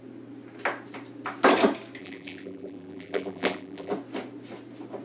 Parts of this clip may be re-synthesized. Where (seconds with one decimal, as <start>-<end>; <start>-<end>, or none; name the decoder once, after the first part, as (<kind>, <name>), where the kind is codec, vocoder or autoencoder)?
2.0-3.9 (vocoder, BigVGAN v2)